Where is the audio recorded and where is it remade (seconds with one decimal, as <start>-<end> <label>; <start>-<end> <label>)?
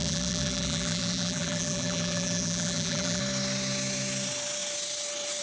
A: 0.0-3.2 remade; 3.2-5.4 recorded